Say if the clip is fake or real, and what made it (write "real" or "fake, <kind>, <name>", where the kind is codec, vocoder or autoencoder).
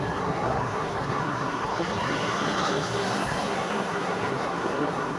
fake, codec, SNAC